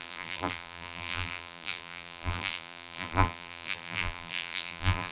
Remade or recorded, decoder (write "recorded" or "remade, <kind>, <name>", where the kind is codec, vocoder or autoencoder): remade, vocoder, BigVGAN v2